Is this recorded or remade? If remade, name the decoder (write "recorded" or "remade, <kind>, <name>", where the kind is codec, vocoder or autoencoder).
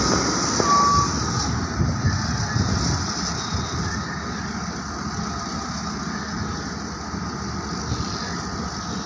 recorded